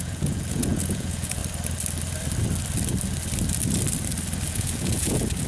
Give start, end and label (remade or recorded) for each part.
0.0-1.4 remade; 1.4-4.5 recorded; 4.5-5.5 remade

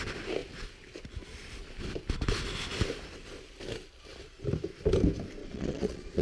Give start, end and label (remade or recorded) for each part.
0.0-5.4 recorded; 5.4-6.2 remade

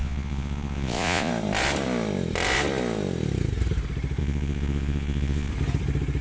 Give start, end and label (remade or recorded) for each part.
0.0-1.3 remade; 1.3-4.2 recorded; 4.2-5.5 remade; 5.5-6.2 recorded

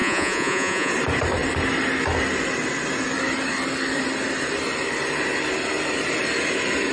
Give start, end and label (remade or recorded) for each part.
0.0-0.9 remade; 0.9-6.9 recorded